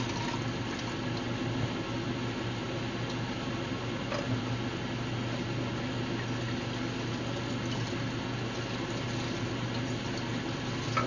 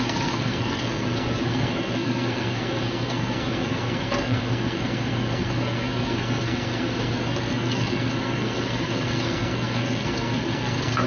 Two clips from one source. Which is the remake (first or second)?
second